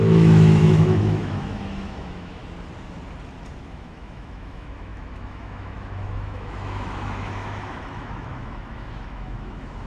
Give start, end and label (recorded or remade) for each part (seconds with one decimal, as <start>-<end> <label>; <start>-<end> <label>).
0.0-2.4 remade; 2.4-3.7 recorded; 3.7-9.9 remade